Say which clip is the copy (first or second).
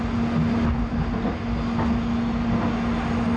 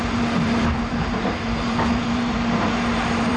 second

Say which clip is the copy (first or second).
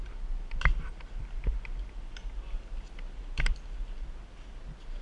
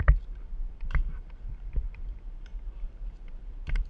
second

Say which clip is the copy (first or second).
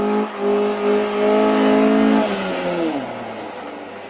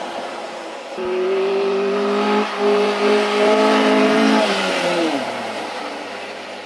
second